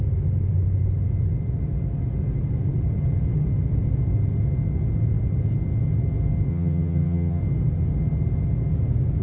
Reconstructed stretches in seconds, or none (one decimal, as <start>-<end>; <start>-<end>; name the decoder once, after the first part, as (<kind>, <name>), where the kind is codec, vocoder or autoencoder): 6.5-7.4 (vocoder, HiFi-GAN)